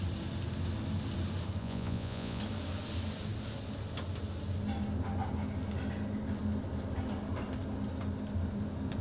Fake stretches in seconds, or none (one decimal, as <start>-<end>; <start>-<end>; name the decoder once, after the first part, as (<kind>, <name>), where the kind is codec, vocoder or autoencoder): 1.6-2.4 (vocoder, Vocos)